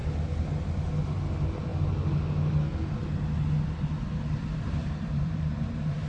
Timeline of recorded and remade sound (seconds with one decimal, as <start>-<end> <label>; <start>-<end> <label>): 0.0-4.8 recorded; 4.8-6.1 remade